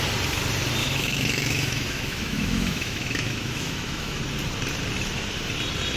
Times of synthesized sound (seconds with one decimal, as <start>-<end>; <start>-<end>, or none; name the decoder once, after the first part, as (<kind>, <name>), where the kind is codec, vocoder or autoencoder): 0.8-4.2 (autoencoder, DAC-VAE)